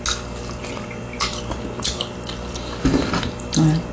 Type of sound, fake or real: real